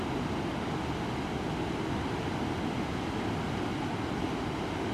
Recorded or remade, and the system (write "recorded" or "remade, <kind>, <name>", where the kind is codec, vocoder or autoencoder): recorded